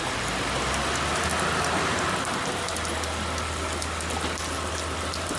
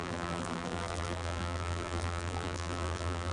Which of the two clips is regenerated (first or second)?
second